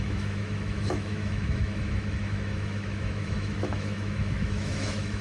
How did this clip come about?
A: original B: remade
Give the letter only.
B